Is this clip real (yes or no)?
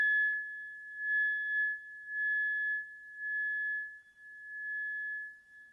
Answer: yes